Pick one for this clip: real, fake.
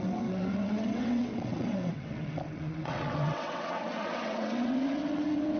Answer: fake